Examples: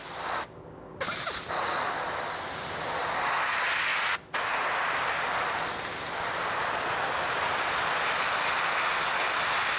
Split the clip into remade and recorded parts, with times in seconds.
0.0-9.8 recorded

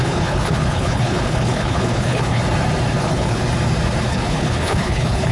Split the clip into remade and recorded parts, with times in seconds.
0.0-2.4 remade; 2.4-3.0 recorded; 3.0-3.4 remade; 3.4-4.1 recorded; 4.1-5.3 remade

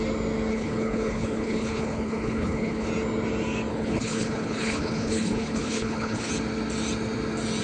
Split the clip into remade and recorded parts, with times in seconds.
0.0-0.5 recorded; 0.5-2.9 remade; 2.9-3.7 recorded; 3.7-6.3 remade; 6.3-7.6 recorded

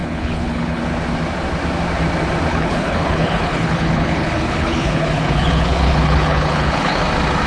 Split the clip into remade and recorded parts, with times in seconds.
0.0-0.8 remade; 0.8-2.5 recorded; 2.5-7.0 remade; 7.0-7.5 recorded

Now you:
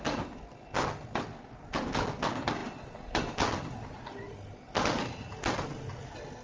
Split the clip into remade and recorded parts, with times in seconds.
0.0-6.4 recorded

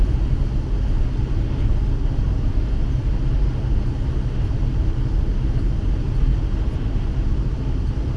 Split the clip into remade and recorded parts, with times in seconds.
0.0-8.2 recorded

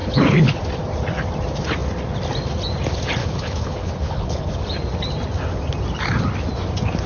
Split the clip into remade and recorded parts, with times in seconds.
0.0-0.6 remade; 0.6-3.2 recorded; 3.2-4.5 remade; 4.5-7.1 recorded